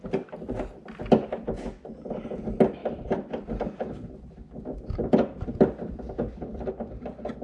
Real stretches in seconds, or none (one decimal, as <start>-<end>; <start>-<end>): 0.0-2.8; 6.9-7.4